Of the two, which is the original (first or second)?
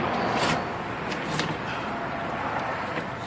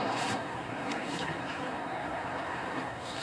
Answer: first